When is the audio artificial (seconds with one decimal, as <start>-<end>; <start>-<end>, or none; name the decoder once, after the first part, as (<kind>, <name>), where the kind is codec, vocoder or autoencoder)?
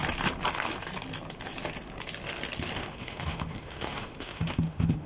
2.8-5.1 (autoencoder, DAC-VAE)